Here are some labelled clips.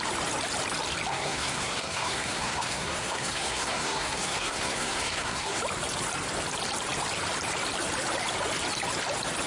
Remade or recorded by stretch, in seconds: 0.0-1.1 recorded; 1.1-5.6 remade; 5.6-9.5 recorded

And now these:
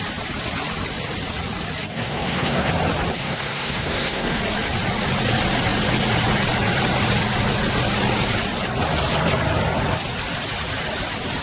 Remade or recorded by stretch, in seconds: 0.0-1.9 recorded; 1.9-2.7 remade; 2.7-3.2 recorded; 3.2-4.4 remade; 4.4-11.4 recorded

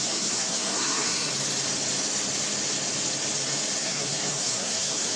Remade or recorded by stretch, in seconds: 0.0-1.3 remade; 1.3-3.8 recorded; 3.8-5.2 remade

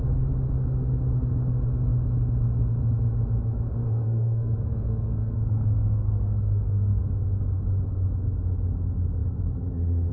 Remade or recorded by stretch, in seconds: 0.0-3.8 recorded; 3.8-7.0 remade; 7.0-10.1 recorded

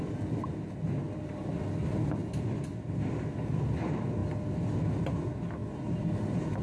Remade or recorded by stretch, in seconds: 0.0-6.6 recorded

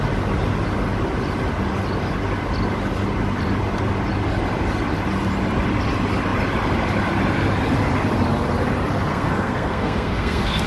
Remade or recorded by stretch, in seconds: 0.0-9.1 recorded; 9.1-10.7 remade